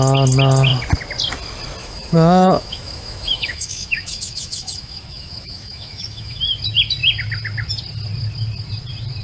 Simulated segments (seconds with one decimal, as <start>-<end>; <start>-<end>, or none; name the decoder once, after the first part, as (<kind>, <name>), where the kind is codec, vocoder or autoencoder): 1.8-6.4 (autoencoder, DAC-VAE)